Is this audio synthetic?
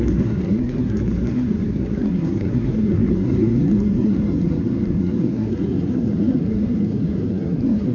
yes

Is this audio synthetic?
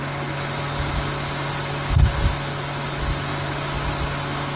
no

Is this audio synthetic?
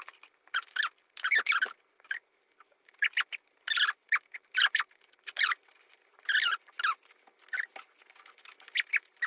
no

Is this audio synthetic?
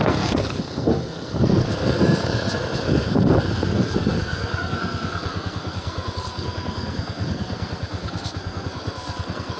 yes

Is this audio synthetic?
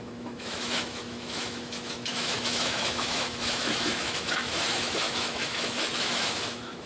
yes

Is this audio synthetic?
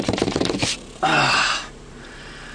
yes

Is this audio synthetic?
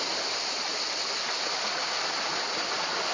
no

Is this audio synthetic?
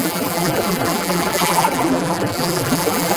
yes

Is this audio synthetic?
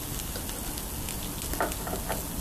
no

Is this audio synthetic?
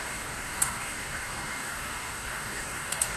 yes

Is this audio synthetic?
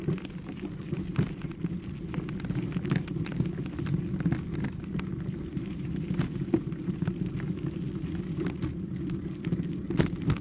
no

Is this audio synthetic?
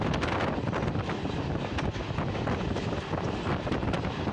no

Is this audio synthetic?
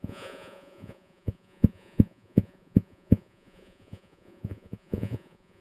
yes